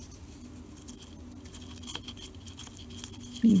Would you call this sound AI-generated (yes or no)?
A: no